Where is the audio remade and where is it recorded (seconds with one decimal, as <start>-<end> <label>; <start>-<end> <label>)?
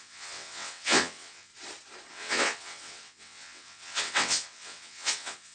0.0-1.5 remade; 1.5-2.1 recorded; 2.1-5.5 remade